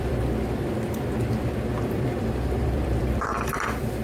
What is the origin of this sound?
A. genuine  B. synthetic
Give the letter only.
B